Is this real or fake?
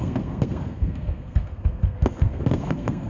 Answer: fake